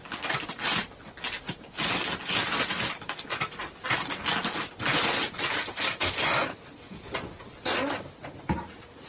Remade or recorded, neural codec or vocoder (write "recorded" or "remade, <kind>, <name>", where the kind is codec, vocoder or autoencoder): recorded